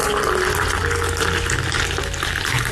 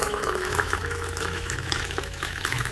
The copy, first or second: second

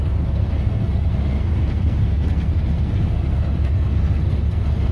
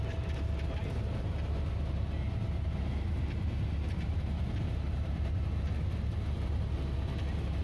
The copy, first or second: first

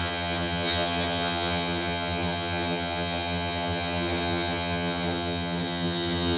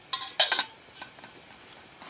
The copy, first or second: first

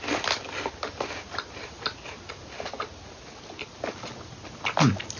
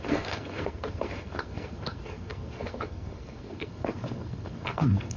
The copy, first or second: second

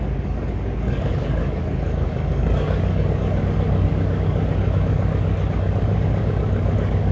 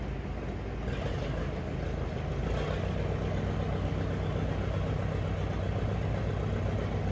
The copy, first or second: first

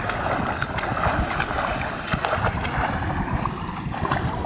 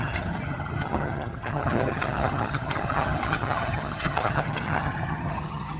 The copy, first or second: second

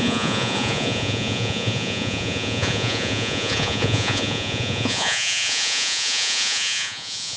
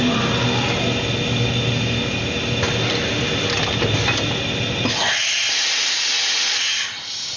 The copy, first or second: first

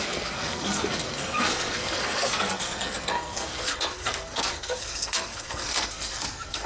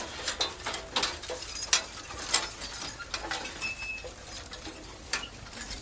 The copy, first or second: first